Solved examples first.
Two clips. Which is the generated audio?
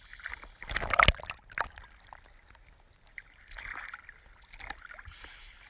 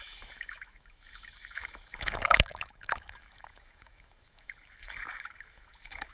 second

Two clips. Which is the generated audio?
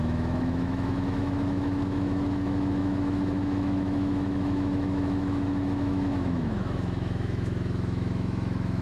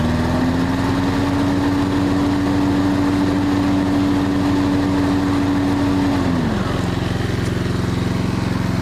first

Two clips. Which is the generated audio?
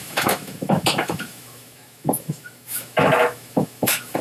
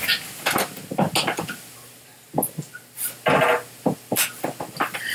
first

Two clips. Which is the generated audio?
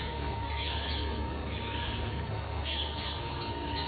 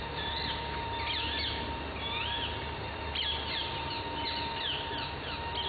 first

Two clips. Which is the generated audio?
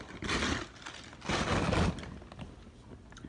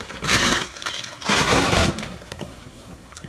second